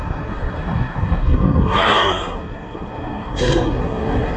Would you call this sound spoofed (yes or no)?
yes